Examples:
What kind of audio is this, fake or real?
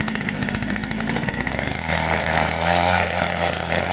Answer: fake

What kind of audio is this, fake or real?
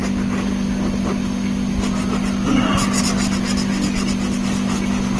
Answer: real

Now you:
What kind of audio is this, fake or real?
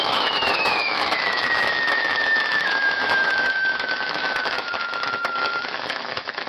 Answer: fake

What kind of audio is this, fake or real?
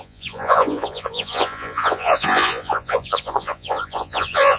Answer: fake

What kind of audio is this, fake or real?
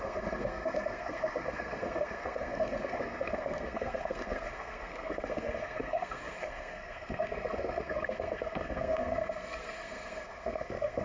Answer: fake